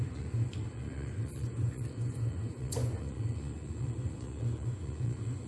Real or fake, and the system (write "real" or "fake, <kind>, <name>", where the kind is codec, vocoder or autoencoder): fake, vocoder, Vocos